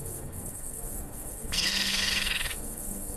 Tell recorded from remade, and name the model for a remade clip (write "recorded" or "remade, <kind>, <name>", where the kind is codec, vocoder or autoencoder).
remade, codec, SNAC